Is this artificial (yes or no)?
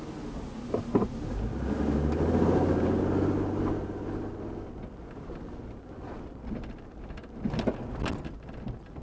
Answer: no